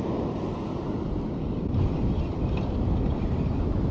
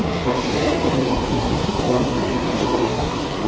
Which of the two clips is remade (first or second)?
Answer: second